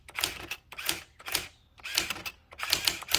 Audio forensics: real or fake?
real